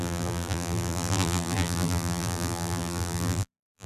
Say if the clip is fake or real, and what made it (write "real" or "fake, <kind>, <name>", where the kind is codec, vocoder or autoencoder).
fake, vocoder, BigVGAN v2